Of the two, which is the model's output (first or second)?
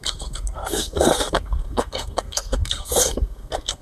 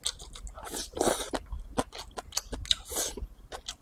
first